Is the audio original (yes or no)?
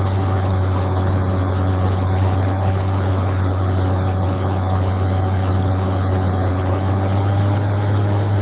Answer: no